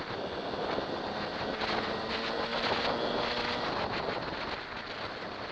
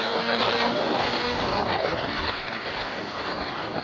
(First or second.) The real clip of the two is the first